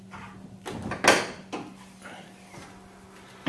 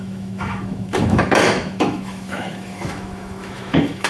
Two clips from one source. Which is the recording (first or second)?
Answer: first